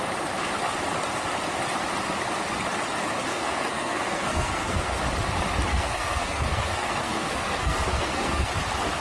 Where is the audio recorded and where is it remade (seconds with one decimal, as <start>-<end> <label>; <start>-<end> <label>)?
0.0-3.3 recorded; 3.3-5.0 remade; 5.0-5.7 recorded; 5.7-8.5 remade; 8.5-9.0 recorded